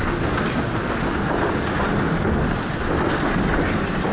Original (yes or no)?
yes